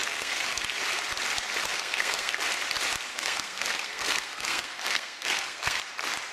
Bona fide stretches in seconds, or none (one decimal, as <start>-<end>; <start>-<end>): 0.6-1.6; 2.4-3.1; 5.8-6.3